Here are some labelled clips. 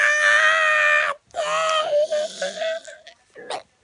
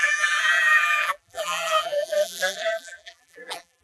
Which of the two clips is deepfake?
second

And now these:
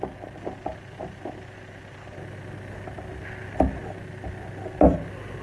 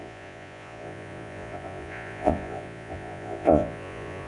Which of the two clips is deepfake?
second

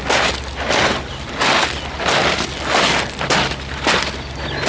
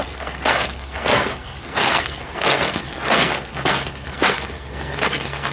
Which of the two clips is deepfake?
second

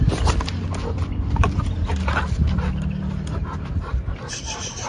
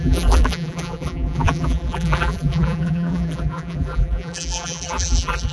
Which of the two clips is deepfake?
second